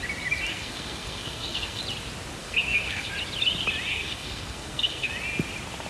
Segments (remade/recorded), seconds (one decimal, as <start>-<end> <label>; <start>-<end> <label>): 0.0-0.5 recorded; 0.5-1.8 remade; 1.8-2.4 recorded; 2.4-3.1 remade; 3.1-3.9 recorded; 3.9-5.1 remade; 5.1-5.9 recorded